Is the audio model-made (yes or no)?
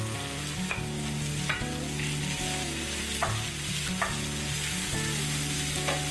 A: no